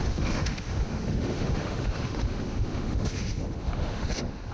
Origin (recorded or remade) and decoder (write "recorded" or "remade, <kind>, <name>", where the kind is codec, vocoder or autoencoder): remade, autoencoder, DAC-VAE